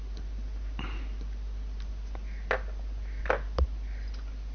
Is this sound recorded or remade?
recorded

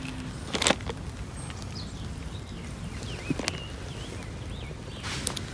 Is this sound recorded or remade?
recorded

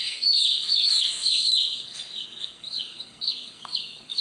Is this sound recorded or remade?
remade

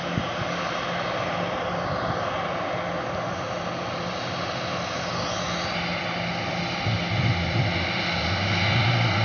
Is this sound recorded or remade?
recorded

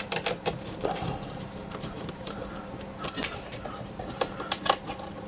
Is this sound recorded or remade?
remade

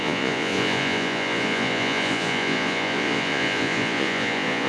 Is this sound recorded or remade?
remade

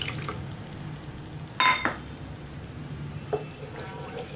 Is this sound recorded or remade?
recorded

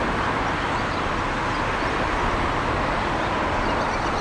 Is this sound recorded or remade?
recorded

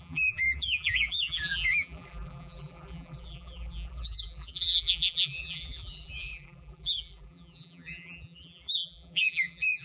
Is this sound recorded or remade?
remade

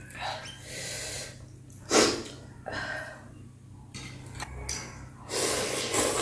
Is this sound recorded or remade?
recorded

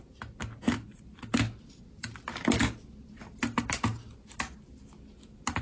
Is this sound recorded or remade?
recorded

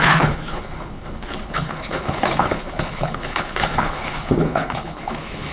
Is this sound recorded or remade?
remade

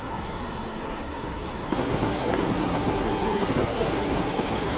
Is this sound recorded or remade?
remade